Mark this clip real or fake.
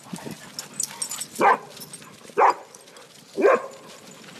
real